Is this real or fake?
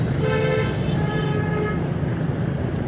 real